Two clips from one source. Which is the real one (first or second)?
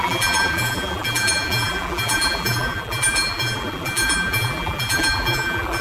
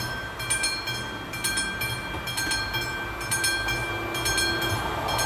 second